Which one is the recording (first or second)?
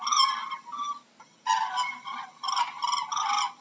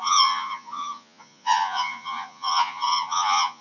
first